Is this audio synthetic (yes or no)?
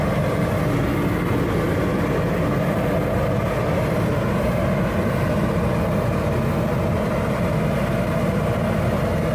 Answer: no